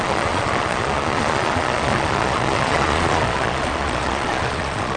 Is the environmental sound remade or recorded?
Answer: remade